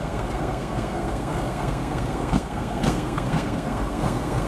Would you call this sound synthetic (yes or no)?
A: yes